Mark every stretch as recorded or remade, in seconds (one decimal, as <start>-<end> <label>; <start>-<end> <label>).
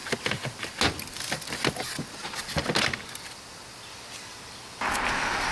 0.0-5.5 recorded